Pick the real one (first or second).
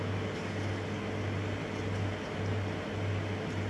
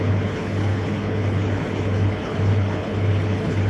first